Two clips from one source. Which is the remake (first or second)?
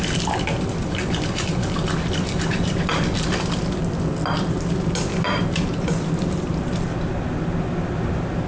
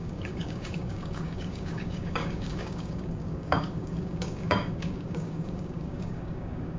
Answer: second